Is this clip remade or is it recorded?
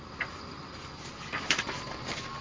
recorded